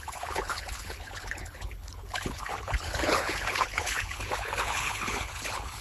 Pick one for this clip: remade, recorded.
remade